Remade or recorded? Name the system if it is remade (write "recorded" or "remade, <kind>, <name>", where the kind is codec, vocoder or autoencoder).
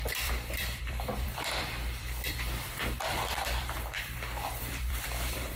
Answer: remade, vocoder, BigVGAN v2